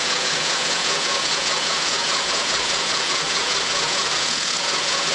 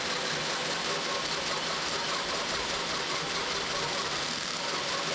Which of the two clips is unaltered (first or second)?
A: second